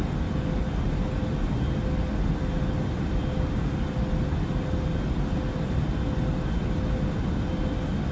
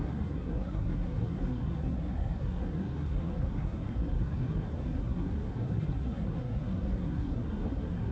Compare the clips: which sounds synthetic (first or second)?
second